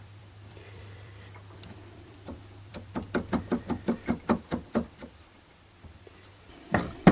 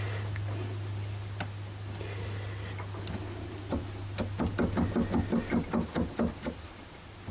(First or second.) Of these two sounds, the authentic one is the second